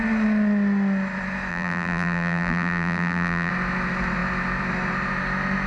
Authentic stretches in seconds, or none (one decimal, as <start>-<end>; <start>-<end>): 0.0-1.5; 3.5-5.7